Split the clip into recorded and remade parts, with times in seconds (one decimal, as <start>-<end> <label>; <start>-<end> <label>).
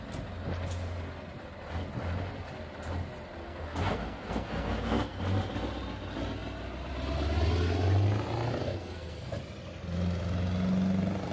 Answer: 0.0-3.4 recorded; 3.4-5.2 remade; 5.2-8.6 recorded; 8.6-9.4 remade; 9.4-11.3 recorded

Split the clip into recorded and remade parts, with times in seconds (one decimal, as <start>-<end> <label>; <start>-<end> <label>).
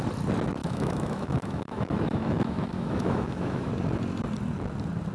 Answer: 0.0-0.6 recorded; 0.6-3.7 remade; 3.7-5.1 recorded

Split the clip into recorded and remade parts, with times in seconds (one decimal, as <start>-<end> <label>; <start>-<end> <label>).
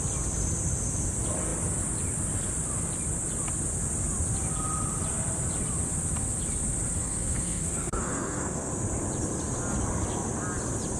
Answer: 0.0-7.0 recorded; 7.0-8.7 remade; 8.7-11.0 recorded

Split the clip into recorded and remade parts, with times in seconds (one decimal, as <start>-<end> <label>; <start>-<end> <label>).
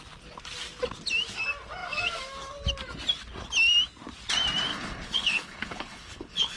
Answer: 0.0-4.7 recorded; 4.7-6.6 remade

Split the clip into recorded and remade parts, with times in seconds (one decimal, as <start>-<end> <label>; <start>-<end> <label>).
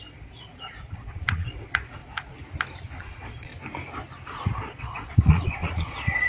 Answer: 0.0-2.0 remade; 2.0-3.0 recorded; 3.0-3.5 remade; 3.5-4.6 recorded; 4.6-6.3 remade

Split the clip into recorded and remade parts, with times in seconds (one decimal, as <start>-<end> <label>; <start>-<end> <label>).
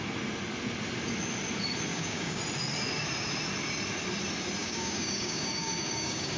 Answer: 0.0-1.9 recorded; 1.9-2.4 remade; 2.4-4.6 recorded; 4.6-6.4 remade